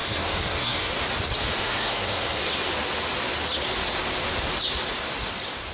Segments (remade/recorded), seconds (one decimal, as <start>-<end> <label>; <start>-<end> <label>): 0.0-0.9 remade; 0.9-1.6 recorded; 1.6-2.4 remade; 2.4-5.7 recorded